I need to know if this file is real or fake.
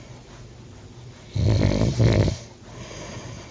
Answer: real